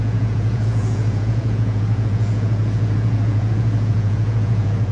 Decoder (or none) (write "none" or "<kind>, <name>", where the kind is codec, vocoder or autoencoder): vocoder, Vocos